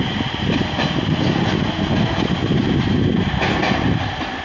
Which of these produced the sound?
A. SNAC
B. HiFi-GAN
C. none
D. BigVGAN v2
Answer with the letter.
C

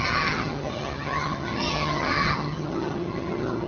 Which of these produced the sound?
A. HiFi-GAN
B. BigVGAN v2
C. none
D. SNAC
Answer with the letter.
A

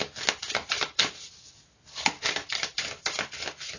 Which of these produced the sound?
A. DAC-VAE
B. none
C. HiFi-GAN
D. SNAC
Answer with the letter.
B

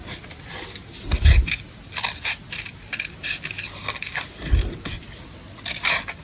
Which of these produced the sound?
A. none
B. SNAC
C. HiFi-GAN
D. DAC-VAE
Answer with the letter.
A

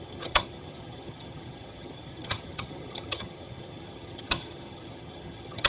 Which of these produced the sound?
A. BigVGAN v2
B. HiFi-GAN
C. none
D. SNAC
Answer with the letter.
B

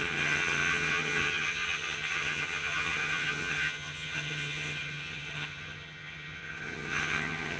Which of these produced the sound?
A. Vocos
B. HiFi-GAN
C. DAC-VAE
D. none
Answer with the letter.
B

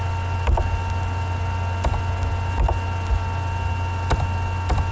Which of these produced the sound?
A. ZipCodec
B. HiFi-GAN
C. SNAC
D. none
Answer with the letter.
D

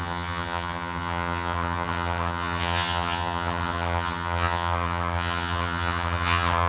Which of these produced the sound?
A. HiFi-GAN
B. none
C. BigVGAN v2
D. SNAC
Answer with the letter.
A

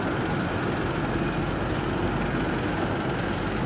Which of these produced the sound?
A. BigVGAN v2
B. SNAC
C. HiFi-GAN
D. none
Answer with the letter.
D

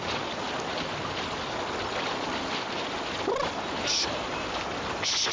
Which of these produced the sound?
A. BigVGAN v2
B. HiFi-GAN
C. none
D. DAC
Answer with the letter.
C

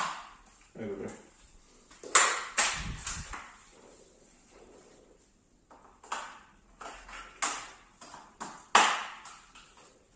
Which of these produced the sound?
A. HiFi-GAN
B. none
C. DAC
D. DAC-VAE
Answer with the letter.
B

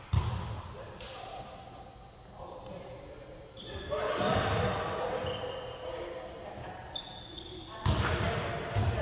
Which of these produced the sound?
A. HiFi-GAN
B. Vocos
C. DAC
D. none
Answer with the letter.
D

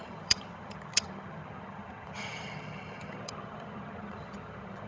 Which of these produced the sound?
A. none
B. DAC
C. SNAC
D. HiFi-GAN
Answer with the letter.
D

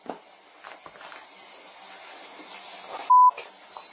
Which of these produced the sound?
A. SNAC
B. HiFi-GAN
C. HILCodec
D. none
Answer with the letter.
D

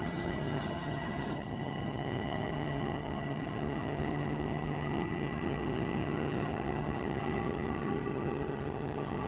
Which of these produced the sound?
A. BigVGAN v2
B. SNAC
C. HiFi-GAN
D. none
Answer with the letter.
C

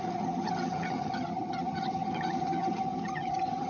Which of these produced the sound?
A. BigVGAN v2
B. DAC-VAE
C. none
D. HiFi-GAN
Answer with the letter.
D